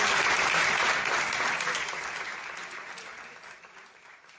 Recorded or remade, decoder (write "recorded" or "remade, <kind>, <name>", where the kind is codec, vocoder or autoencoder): recorded